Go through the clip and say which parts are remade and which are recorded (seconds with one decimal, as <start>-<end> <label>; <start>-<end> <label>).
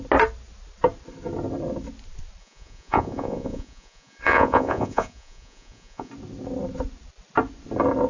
0.0-2.4 recorded; 2.4-6.1 remade; 6.1-8.1 recorded